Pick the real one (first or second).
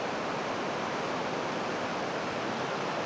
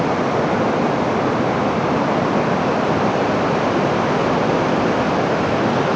second